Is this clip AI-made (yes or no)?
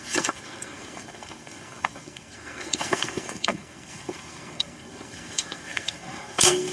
yes